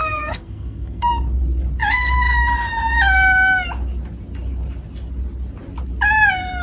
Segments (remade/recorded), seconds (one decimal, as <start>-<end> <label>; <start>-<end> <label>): 0.0-1.1 remade; 1.1-6.6 recorded